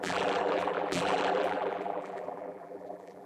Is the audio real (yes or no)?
no